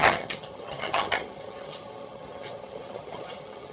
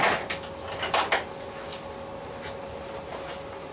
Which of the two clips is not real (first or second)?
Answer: first